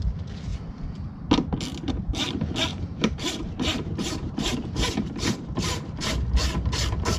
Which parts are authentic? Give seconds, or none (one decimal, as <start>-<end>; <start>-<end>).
0.0-2.7; 6.1-7.2